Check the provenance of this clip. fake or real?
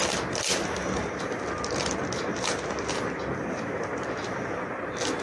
real